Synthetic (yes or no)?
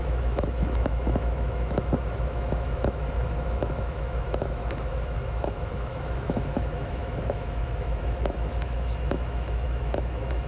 yes